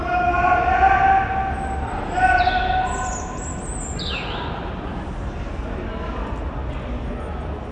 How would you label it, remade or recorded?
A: recorded